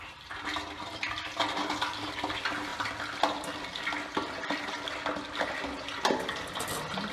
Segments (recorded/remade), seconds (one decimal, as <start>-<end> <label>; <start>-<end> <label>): 0.0-7.1 recorded